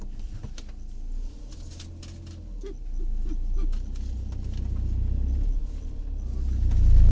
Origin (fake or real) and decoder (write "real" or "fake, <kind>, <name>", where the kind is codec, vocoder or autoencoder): real